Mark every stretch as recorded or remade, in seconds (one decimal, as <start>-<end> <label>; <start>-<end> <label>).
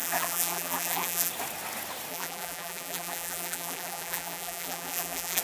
0.0-1.3 remade; 1.3-2.1 recorded; 2.1-5.4 remade